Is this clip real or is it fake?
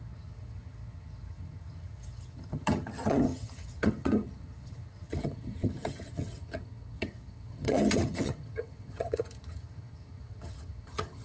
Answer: fake